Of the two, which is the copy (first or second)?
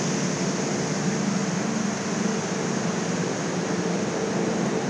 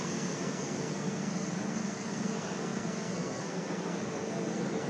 second